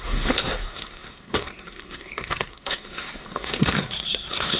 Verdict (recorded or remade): remade